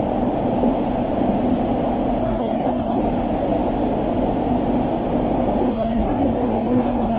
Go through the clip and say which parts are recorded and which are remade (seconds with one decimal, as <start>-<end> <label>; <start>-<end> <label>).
0.0-2.2 recorded; 2.2-3.0 remade; 3.0-5.6 recorded; 5.6-7.2 remade